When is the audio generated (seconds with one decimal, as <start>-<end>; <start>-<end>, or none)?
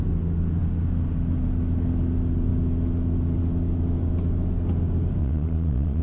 5.2-6.0